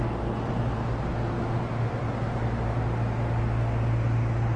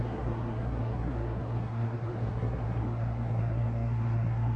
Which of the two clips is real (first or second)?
first